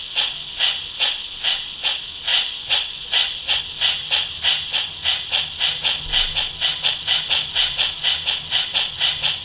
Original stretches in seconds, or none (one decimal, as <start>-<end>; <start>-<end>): 0.0-2.3; 3.6-9.4